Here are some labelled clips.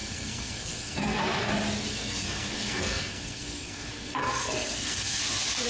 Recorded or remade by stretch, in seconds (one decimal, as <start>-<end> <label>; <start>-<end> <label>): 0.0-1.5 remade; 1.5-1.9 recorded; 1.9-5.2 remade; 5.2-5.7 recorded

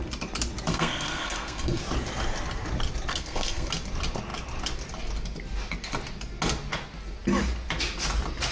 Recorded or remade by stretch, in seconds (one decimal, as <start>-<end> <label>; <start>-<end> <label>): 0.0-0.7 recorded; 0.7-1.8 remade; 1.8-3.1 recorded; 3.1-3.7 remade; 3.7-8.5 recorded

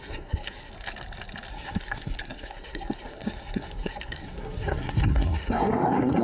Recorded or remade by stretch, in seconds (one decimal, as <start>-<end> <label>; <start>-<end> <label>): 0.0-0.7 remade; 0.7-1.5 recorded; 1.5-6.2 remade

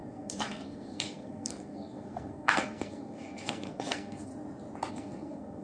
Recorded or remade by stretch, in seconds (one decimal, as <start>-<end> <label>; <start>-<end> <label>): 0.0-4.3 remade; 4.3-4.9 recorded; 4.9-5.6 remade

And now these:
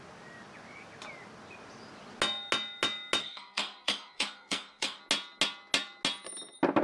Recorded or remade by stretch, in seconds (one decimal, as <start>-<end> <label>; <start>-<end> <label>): 0.0-3.2 recorded; 3.2-5.0 remade; 5.0-6.8 recorded